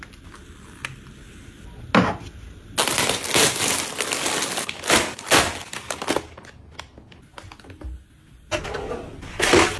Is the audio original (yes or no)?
yes